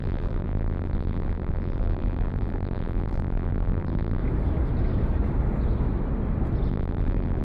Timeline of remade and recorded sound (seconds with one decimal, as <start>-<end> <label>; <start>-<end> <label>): 0.0-4.2 remade; 4.2-6.7 recorded; 6.7-7.4 remade

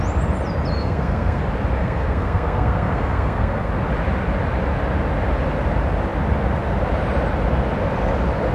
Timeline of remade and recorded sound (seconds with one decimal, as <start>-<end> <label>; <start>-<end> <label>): 0.0-0.8 recorded; 0.8-1.4 remade; 1.4-1.8 recorded; 1.8-3.7 remade; 3.7-8.5 recorded

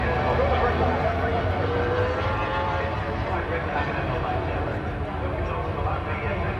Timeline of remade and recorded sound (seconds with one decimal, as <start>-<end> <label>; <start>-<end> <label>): 0.0-6.6 recorded

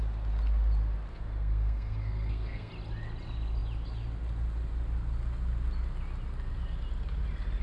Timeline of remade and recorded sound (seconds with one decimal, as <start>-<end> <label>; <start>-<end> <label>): 0.0-1.1 recorded; 1.1-2.7 remade; 2.7-7.6 recorded

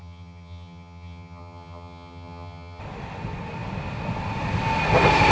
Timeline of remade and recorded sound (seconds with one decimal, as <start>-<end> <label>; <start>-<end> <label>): 0.0-2.8 remade; 2.8-5.3 recorded

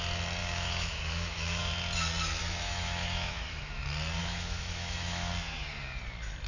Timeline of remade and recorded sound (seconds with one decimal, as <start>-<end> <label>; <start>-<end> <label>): 0.0-0.4 recorded; 0.4-1.7 remade; 1.7-2.4 recorded; 2.4-3.6 remade; 3.6-4.2 recorded; 4.2-5.3 remade; 5.3-6.5 recorded

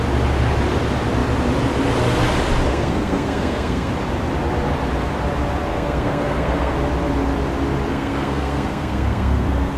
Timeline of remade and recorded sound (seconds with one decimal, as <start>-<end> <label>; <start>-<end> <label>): 0.0-2.7 recorded; 2.7-3.9 remade; 3.9-5.7 recorded; 5.7-6.7 remade; 6.7-7.9 recorded; 7.9-9.8 remade